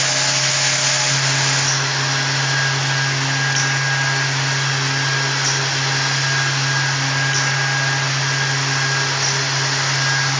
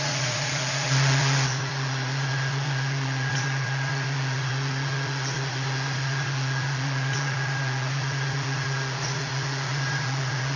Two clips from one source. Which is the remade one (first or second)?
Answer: second